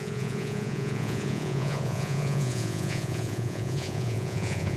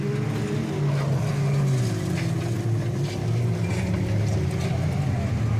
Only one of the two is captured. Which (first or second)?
second